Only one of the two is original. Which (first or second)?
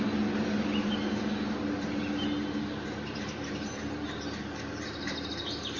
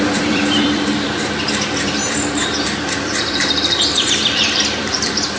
first